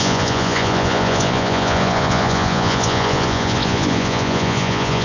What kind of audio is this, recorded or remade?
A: remade